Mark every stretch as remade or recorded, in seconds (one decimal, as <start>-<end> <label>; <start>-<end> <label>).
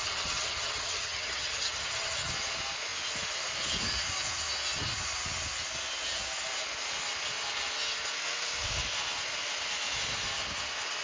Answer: 0.0-2.3 remade; 2.3-11.0 recorded